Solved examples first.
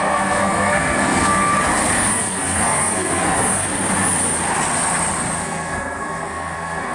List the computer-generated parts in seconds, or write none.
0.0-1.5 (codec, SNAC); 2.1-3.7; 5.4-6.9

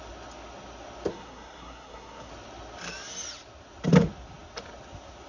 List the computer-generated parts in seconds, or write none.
1.1-2.3 (codec, SNAC)

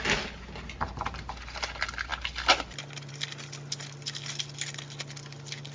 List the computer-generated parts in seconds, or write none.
none

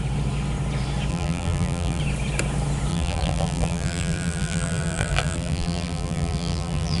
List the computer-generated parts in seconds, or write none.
1.1-2.0 (vocoder, BigVGAN v2); 2.9-7.0

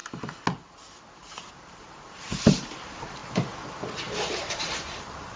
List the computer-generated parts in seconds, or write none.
1.5-3.2 (vocoder, BigVGAN v2); 4.3-5.4

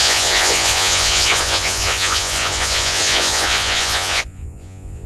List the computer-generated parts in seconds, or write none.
0.0-5.1 (vocoder, Vocos)

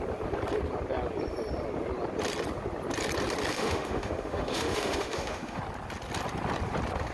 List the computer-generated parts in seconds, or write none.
3.5-5.6 (autoencoder, DAC-VAE)